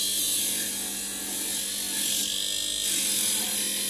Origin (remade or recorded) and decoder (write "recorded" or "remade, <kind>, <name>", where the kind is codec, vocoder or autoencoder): recorded